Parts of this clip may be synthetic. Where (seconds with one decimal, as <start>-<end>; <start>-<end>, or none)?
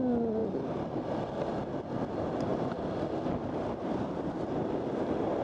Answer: none